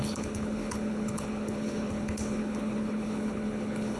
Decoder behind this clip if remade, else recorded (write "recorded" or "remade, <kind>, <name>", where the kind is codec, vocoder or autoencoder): remade, codec, HILCodec